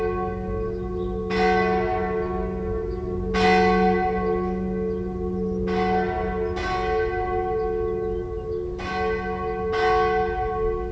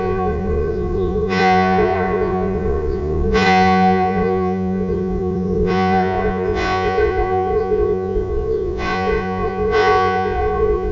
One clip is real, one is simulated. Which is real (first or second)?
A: first